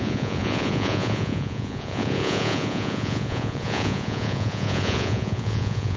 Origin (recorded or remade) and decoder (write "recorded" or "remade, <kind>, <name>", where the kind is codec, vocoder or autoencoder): remade, vocoder, Vocos